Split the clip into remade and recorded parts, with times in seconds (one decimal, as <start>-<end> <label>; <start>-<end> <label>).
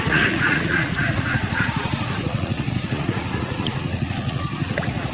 0.0-5.1 remade